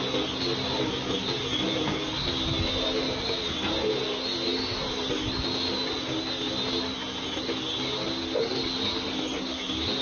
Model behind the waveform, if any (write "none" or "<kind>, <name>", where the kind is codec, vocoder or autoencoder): none